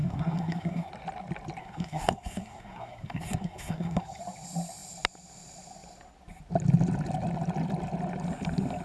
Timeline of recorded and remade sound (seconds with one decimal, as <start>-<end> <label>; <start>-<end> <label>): 0.0-0.9 remade; 0.9-1.6 recorded; 1.6-4.2 remade; 4.2-8.8 recorded